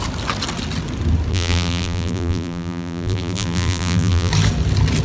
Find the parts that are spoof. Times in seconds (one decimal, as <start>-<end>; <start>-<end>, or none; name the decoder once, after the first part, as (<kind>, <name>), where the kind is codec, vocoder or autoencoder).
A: 1.3-4.3 (vocoder, BigVGAN v2)